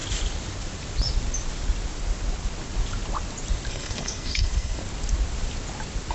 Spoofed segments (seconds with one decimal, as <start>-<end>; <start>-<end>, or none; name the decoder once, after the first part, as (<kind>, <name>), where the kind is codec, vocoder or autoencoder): 3.7-4.8 (codec, SNAC)

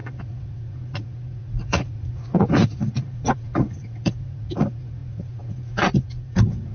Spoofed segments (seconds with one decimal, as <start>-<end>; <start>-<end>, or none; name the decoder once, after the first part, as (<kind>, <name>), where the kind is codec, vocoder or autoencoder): 0.0-6.7 (vocoder, Vocos)

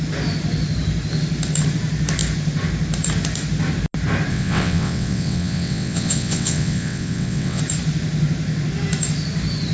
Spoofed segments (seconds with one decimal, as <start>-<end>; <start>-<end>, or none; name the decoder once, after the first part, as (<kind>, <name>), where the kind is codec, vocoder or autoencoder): 4.3-7.6 (vocoder, WaveNeXt)